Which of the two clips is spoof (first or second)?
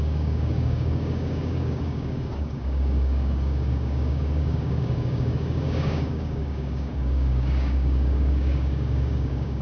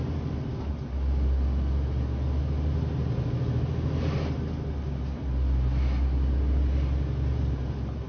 first